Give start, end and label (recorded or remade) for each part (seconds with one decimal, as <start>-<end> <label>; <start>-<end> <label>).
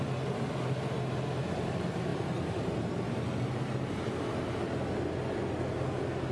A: 0.0-2.1 recorded; 2.1-4.1 remade; 4.1-6.3 recorded